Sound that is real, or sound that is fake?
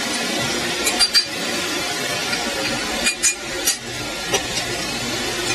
real